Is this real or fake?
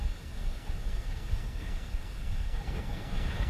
fake